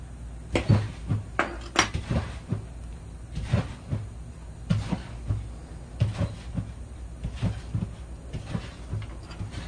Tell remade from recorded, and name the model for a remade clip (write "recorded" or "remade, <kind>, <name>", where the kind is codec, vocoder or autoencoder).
recorded